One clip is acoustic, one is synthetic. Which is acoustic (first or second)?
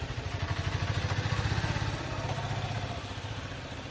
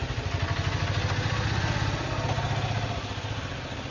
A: second